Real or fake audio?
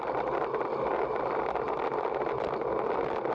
real